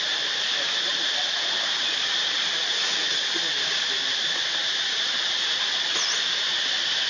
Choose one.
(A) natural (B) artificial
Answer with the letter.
A